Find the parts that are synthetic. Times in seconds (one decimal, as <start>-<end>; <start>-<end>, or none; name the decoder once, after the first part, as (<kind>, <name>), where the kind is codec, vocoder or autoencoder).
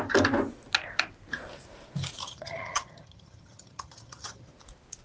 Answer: 2.2-4.5 (vocoder, HiFi-GAN)